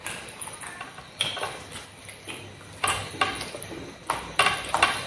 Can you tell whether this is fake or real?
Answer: real